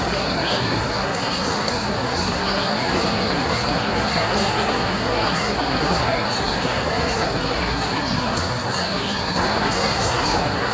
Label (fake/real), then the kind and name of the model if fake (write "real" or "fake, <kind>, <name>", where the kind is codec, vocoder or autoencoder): fake, codec, SNAC